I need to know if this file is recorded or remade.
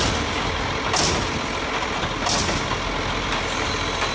recorded